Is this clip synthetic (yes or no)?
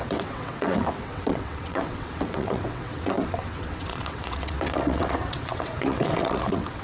yes